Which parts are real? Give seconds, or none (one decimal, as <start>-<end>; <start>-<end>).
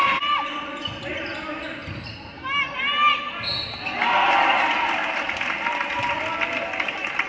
0.0-7.3